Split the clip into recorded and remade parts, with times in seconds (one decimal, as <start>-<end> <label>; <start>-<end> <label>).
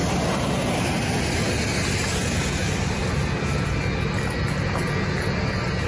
0.0-5.9 recorded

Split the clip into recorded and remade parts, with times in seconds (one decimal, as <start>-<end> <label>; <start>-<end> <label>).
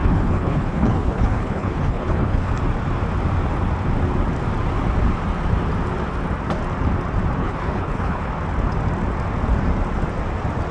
0.0-2.5 remade; 2.5-7.4 recorded; 7.4-8.3 remade; 8.3-10.7 recorded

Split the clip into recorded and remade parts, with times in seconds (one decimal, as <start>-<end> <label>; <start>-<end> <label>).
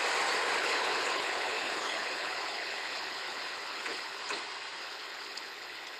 0.0-0.6 recorded; 0.6-4.2 remade; 4.2-4.8 recorded; 4.8-6.0 remade